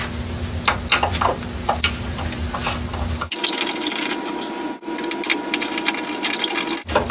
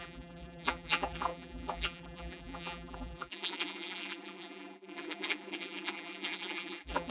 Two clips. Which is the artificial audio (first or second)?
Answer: second